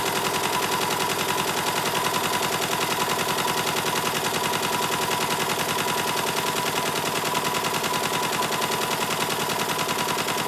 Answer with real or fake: real